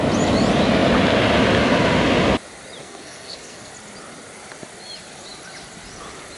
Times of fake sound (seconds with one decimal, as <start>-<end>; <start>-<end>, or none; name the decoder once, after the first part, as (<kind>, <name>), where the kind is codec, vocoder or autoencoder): 2.8-3.7 (codec, SNAC)